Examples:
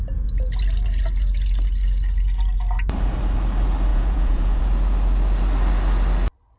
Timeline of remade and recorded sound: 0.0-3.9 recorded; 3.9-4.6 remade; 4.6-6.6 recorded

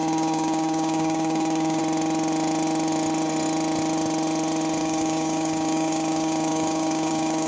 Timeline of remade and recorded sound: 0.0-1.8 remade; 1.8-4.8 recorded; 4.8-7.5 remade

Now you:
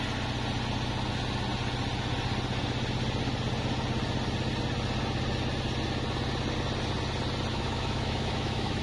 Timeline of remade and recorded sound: 0.0-7.5 recorded; 7.5-8.8 remade

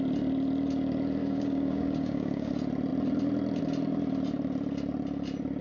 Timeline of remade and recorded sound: 0.0-1.2 recorded; 1.2-2.5 remade; 2.5-5.6 recorded